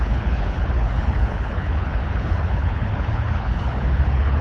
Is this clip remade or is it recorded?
remade